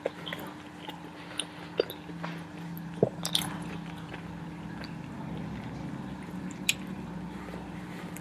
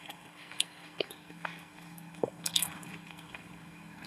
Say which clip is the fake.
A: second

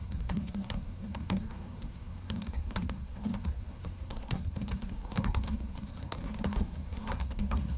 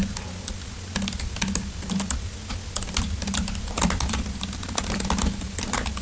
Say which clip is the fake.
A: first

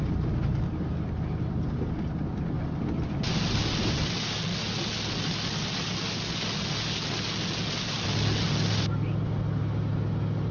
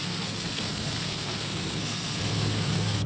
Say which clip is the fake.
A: second